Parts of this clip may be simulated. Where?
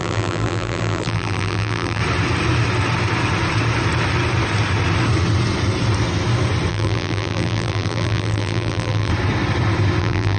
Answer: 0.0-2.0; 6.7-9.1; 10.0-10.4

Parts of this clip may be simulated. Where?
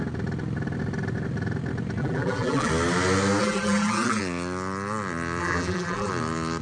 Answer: 2.0-2.7; 3.4-4.2; 5.4-6.1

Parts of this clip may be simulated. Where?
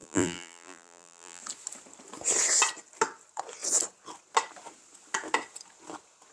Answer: 0.0-1.4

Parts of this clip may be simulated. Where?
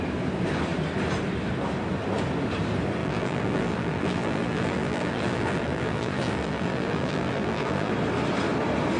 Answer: 3.0-7.9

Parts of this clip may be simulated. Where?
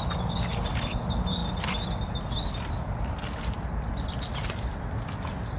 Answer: none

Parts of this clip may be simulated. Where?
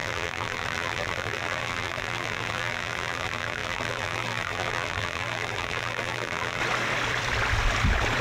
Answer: 0.0-6.6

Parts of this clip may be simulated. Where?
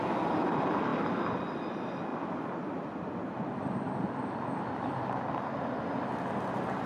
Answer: none